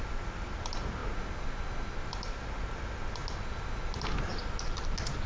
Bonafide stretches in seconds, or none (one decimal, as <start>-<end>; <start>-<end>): 1.0-2.1; 3.2-3.9; 4.3-5.3